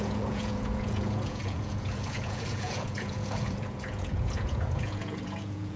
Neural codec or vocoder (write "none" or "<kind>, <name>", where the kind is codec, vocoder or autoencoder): vocoder, Vocos